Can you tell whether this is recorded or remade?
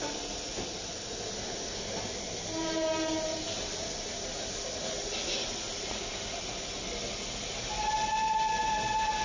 recorded